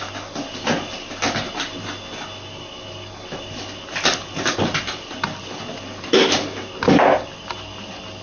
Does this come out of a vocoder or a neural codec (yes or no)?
no